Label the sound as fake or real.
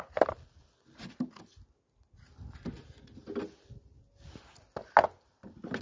real